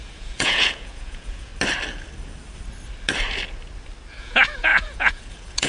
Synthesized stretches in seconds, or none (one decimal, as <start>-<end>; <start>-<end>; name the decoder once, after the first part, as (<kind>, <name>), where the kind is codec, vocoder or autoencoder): 0.0-1.5 (vocoder, Vocos); 4.2-5.7

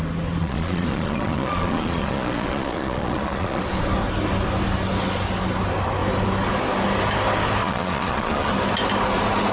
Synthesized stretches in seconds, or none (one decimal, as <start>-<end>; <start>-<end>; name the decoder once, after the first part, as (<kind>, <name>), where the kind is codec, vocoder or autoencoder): 0.4-3.6 (vocoder, Vocos); 7.6-8.5

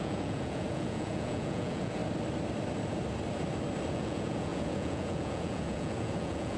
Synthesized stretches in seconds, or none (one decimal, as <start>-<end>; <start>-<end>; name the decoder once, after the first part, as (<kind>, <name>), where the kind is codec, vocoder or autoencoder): 0.0-2.0 (vocoder, Vocos); 3.9-6.6

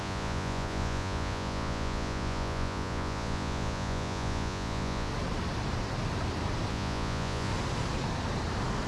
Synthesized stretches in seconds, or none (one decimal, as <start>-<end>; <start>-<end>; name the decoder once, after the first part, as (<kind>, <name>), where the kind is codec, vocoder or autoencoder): 0.0-5.1 (vocoder, Vocos); 6.7-7.5

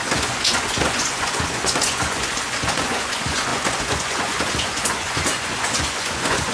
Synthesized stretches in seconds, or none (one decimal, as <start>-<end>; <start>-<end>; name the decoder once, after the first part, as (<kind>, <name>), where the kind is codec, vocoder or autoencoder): 0.0-6.5 (vocoder, Vocos)